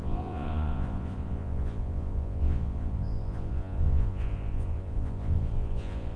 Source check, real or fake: fake